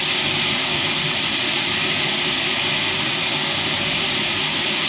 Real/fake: real